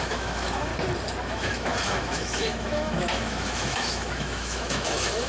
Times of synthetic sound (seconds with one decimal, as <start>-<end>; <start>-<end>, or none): 0.0-0.7; 1.2-5.3